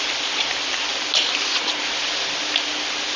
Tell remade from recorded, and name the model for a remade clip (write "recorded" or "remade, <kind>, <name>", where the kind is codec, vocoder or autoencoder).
recorded